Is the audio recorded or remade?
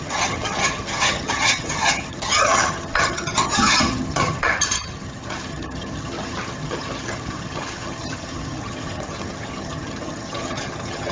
remade